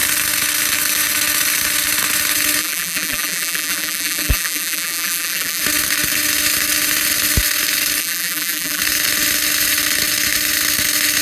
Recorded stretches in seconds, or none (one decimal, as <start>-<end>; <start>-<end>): 0.0-2.6; 5.6-8.0; 8.8-11.2